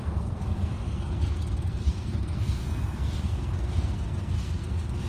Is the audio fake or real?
fake